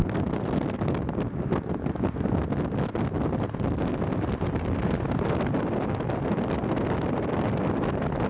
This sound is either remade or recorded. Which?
recorded